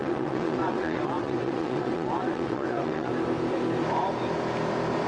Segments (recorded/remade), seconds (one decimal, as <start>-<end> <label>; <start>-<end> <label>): 0.0-3.1 remade; 3.1-5.1 recorded